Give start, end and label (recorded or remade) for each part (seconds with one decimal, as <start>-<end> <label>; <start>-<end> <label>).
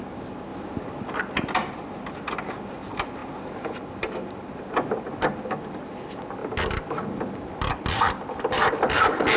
0.0-9.4 recorded